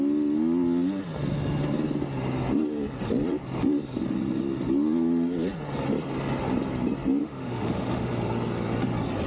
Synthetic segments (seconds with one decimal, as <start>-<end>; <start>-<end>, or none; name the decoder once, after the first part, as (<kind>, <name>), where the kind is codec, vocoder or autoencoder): 7.2-8.1 (autoencoder, DAC-VAE)